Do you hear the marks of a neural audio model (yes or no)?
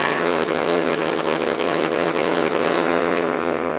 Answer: yes